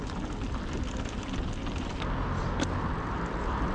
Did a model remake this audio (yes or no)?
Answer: no